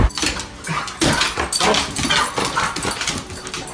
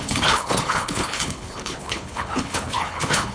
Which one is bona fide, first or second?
first